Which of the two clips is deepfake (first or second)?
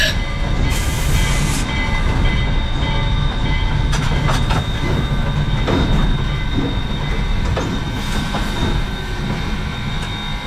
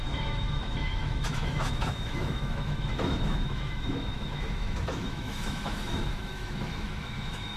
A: second